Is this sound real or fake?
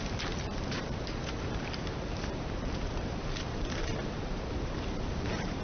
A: fake